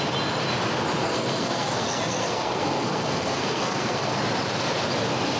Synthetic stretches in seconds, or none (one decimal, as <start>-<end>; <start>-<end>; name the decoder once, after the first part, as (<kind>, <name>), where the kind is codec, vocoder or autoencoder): 1.0-4.2 (codec, SNAC)